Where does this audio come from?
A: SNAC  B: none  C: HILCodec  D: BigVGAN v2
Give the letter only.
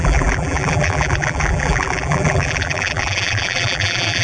D